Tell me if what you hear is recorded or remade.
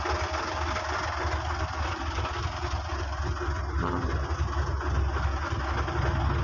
recorded